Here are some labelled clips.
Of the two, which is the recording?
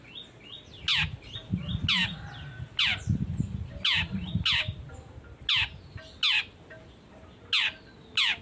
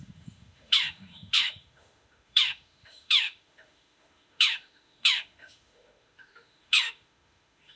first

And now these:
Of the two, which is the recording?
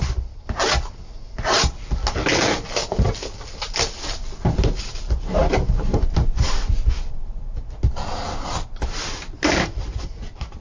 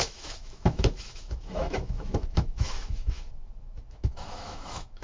first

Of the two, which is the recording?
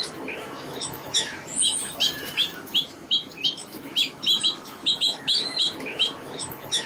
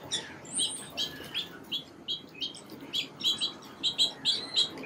second